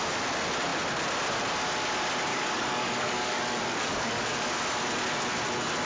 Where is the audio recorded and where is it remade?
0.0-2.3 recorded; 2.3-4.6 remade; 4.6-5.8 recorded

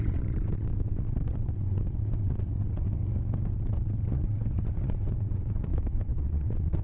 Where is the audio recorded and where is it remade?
0.0-3.0 remade; 3.0-3.5 recorded; 3.5-6.8 remade

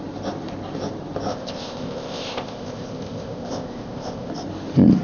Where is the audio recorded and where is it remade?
0.0-1.3 recorded; 1.3-4.3 remade; 4.3-5.0 recorded

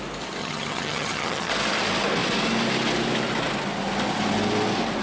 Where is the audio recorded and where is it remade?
0.0-0.4 recorded; 0.4-1.5 remade; 1.5-5.0 recorded

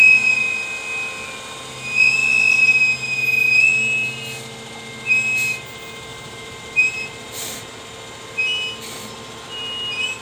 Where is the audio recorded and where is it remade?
0.0-6.1 recorded; 6.1-7.7 remade; 7.7-10.2 recorded

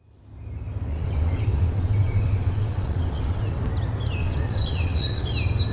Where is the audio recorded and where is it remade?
0.0-0.9 recorded; 0.9-3.6 remade; 3.6-4.2 recorded; 4.2-5.2 remade; 5.2-5.7 recorded

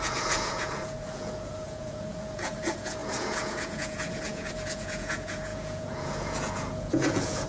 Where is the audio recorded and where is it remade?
0.0-7.5 remade